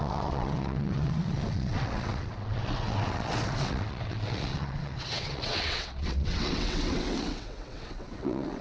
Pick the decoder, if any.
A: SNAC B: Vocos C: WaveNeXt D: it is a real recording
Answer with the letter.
C